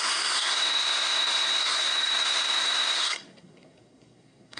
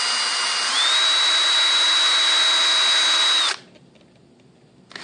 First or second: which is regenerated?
first